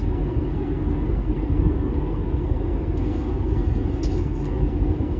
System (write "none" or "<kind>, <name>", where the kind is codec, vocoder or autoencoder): codec, SNAC